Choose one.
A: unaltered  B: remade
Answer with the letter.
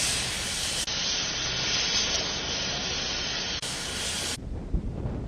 A